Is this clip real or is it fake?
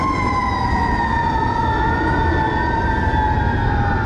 real